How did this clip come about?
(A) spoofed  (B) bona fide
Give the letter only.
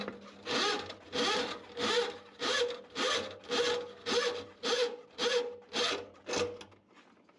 B